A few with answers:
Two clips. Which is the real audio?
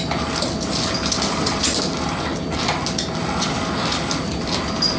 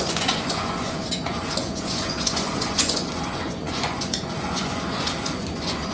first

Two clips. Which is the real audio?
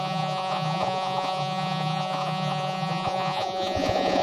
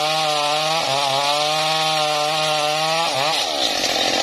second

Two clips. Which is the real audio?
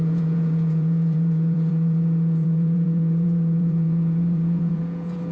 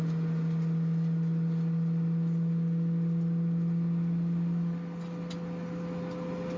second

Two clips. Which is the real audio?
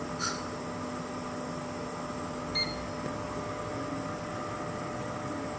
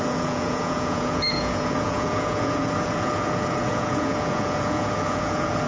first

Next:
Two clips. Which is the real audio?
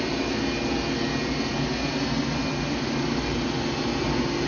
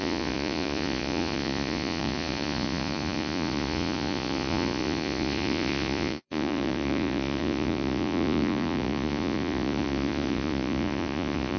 first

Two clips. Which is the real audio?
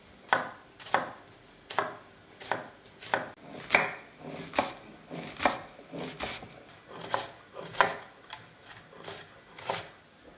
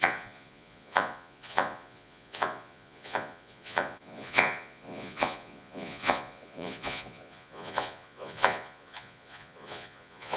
first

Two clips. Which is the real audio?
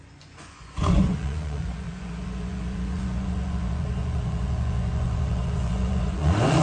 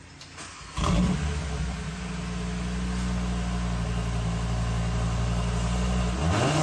second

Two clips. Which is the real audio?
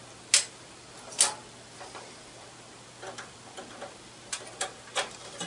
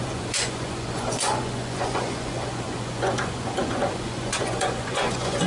first